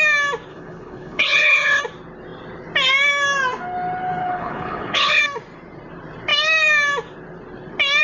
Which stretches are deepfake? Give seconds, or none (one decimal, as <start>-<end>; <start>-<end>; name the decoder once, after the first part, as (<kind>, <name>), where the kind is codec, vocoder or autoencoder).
0.5-1.8 (codec, HILCodec); 4.2-5.2